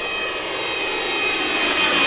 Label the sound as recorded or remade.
recorded